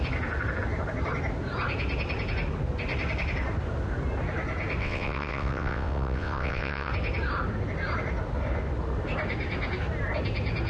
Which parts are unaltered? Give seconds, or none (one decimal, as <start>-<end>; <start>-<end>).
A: 0.0-4.8; 6.9-10.7